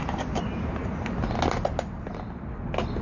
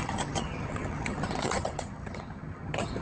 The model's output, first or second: second